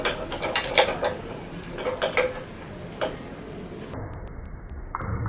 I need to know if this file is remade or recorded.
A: recorded